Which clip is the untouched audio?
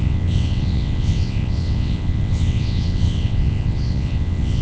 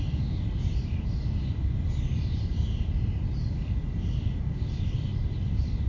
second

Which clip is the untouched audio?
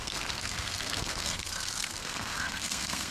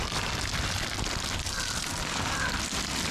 second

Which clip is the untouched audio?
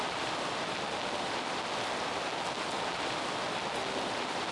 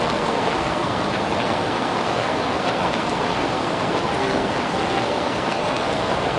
first